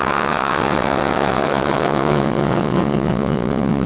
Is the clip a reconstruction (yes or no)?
yes